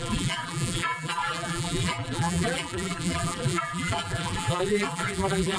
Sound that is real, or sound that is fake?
fake